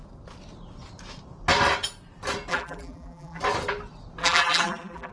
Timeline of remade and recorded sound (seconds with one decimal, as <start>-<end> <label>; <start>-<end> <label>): 0.0-2.5 recorded; 2.5-3.4 remade; 3.4-4.2 recorded; 4.2-5.1 remade